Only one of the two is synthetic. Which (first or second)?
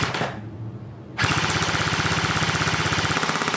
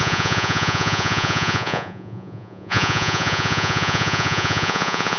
second